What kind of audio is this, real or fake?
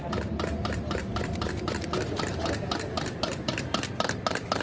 real